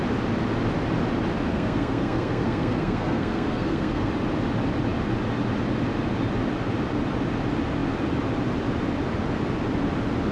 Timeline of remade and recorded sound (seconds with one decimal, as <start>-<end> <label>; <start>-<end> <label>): 0.0-1.5 recorded; 1.5-4.1 remade; 4.1-10.3 recorded